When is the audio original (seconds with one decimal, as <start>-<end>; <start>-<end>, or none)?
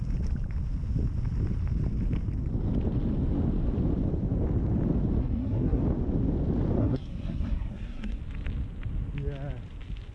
0.0-5.2; 5.8-6.8; 8.2-10.1